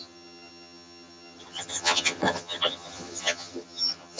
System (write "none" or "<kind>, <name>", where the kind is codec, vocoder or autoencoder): vocoder, HiFi-GAN